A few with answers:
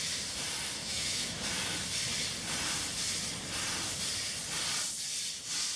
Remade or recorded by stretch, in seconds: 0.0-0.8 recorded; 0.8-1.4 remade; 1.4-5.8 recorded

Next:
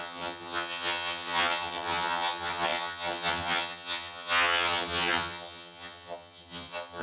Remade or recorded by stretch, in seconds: 0.0-7.0 remade

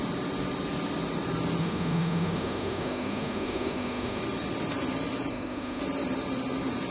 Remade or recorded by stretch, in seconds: 0.0-1.6 recorded; 1.6-4.2 remade; 4.2-5.3 recorded; 5.3-5.8 remade; 5.8-6.9 recorded

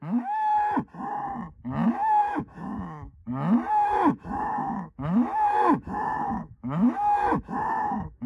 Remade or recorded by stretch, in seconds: 0.0-0.5 remade; 0.5-1.9 recorded; 1.9-3.2 remade; 3.2-3.7 recorded; 3.7-8.3 remade

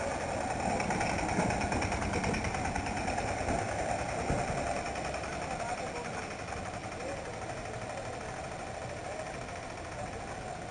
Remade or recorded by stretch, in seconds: 0.0-10.7 recorded

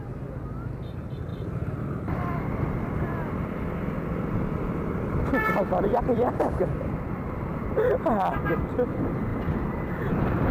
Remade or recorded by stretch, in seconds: 0.0-10.5 remade

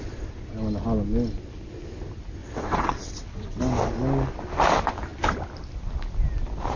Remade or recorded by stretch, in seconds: 0.0-2.4 recorded; 2.4-3.6 remade; 3.6-6.8 recorded